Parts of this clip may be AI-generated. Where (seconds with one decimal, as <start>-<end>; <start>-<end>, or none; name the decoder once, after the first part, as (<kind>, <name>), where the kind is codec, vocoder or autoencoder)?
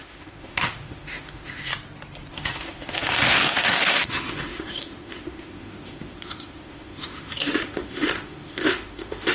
0.0-1.7 (autoencoder, DAC-VAE); 2.3-9.3